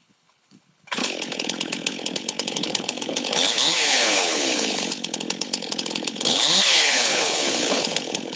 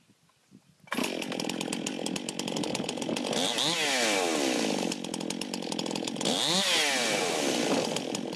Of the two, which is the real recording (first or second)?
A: second